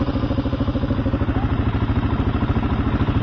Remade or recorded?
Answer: recorded